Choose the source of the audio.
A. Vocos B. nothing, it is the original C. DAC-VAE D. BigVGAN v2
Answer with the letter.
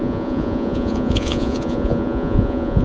A